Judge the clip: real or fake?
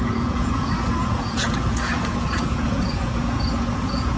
fake